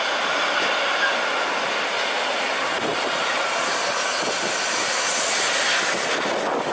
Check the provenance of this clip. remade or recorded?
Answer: recorded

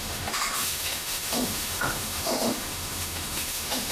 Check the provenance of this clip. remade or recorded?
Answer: remade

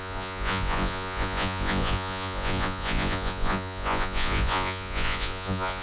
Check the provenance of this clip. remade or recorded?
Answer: remade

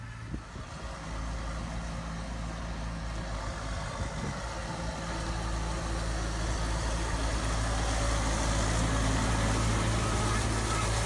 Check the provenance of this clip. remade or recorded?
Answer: recorded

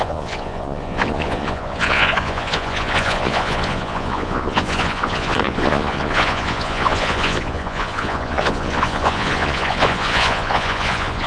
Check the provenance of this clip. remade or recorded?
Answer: remade